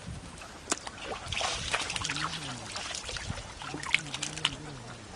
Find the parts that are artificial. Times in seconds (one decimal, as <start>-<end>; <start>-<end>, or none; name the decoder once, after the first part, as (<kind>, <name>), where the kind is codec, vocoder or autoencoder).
0.0-0.5 (autoencoder, DAC-VAE)